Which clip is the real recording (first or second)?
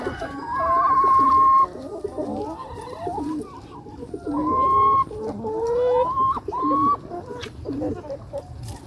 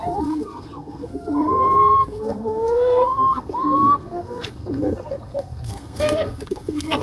first